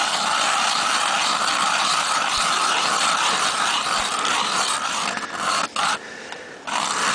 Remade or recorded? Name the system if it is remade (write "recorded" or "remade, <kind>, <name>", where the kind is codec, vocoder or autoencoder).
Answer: recorded